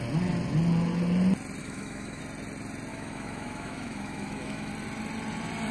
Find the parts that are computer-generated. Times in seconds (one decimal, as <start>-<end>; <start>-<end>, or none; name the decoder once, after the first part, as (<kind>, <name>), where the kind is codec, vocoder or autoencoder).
1.6-2.2 (autoencoder, DAC-VAE); 2.9-4.7